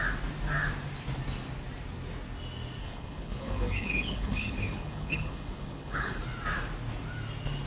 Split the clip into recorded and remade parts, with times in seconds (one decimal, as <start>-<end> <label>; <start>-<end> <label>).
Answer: 0.0-2.8 recorded; 2.8-6.2 remade; 6.2-7.7 recorded